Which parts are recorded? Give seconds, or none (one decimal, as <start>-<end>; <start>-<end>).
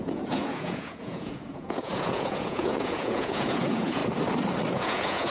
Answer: 4.0-4.7